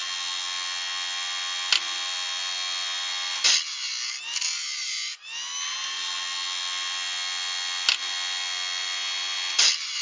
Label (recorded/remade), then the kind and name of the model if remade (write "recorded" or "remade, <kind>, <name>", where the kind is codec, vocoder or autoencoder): recorded